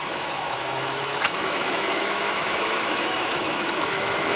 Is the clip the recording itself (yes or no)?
no